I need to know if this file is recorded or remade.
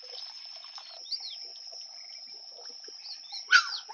recorded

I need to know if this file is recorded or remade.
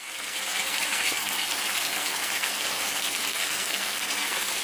remade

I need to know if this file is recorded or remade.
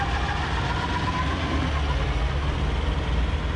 recorded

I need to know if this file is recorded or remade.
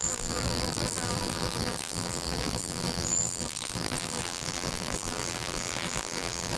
remade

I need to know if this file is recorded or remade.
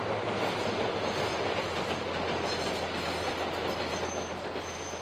recorded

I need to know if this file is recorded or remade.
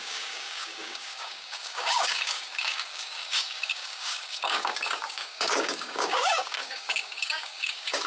remade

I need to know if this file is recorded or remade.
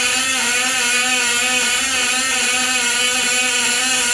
recorded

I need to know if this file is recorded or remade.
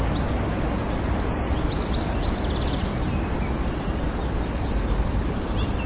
recorded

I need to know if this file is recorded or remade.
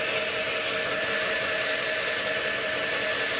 recorded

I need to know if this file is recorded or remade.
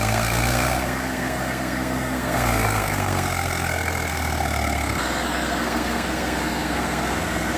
remade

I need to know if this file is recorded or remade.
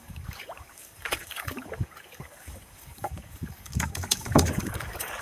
remade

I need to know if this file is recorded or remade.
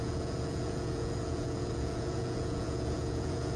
remade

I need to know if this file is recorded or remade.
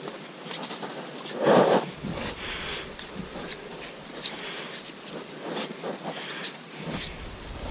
recorded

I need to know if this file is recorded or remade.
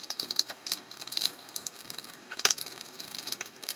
remade